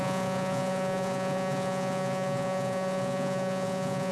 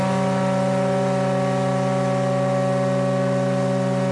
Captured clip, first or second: second